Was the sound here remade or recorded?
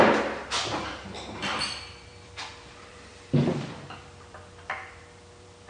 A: remade